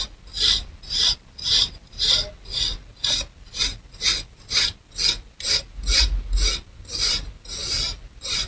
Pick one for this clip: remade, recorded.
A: recorded